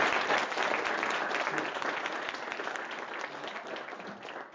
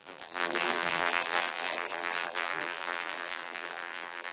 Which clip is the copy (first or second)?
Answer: second